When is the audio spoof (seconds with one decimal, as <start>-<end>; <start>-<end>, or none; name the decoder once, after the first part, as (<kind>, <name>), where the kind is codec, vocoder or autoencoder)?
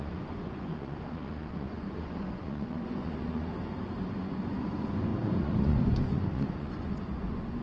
0.0-3.5 (vocoder, Vocos); 4.1-7.6